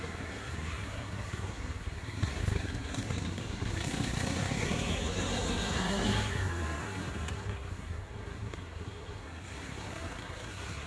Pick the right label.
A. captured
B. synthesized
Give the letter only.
B